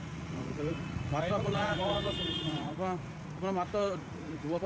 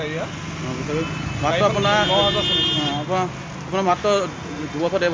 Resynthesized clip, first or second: first